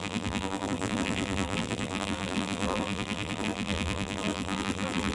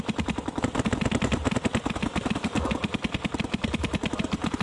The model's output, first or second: first